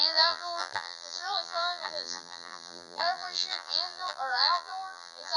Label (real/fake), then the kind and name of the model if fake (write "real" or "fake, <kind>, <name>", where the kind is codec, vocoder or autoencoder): fake, vocoder, BigVGAN v2